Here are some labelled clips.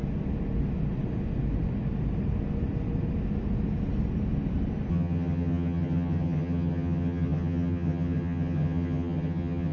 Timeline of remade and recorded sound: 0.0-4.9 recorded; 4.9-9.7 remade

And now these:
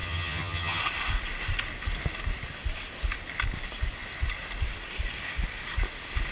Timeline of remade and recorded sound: 0.0-0.8 remade; 0.8-6.3 recorded

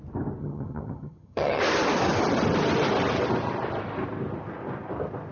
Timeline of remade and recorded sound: 0.0-0.4 recorded; 0.4-1.6 remade; 1.6-5.3 recorded

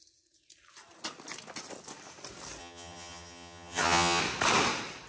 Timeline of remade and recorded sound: 0.0-2.6 recorded; 2.6-4.2 remade; 4.2-5.1 recorded

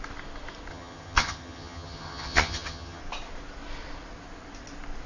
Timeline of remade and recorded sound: 0.0-0.7 recorded; 0.7-3.0 remade; 3.0-5.1 recorded

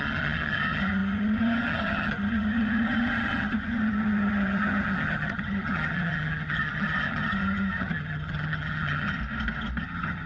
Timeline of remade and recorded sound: 0.0-9.2 remade; 9.2-9.8 recorded; 9.8-10.3 remade

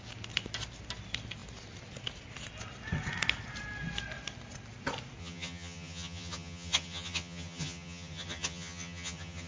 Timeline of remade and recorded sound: 0.0-5.2 recorded; 5.2-9.5 remade

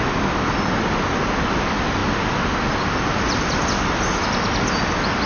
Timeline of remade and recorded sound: 0.0-5.3 recorded